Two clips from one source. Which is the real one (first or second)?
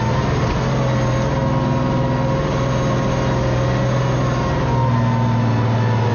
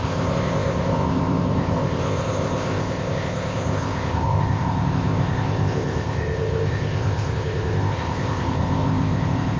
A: first